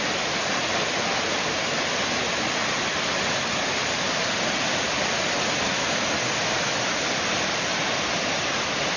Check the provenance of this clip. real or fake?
real